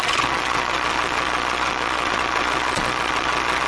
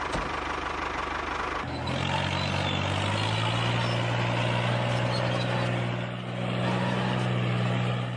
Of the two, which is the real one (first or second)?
second